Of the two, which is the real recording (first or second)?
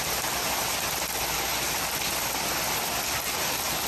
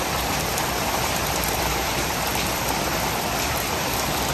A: first